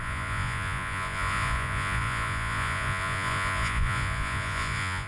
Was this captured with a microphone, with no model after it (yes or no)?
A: no